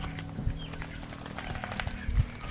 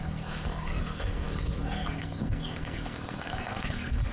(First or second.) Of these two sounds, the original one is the first